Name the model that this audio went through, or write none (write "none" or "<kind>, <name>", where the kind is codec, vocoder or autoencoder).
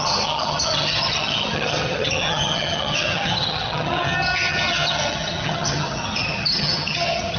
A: vocoder, HiFi-GAN